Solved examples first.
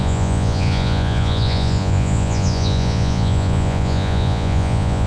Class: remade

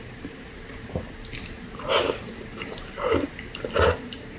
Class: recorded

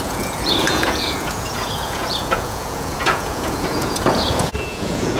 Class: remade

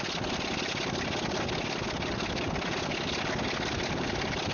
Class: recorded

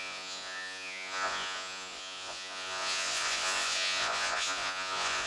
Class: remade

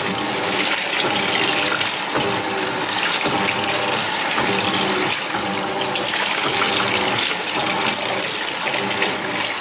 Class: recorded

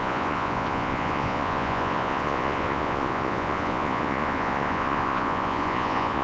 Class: remade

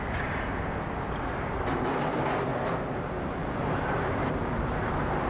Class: recorded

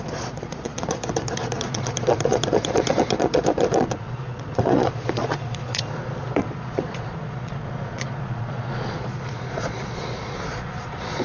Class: remade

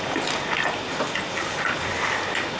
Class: recorded